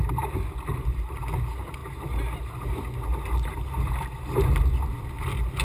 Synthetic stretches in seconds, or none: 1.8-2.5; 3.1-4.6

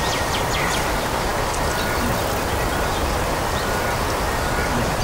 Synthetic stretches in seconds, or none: 0.0-1.3; 4.3-5.0

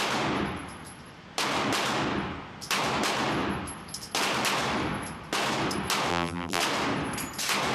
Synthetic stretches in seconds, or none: 6.1-6.6

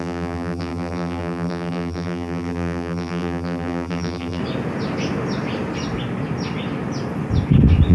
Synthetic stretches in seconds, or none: 0.0-4.4

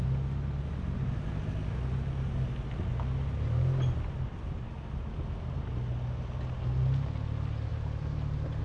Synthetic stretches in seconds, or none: 7.7-8.6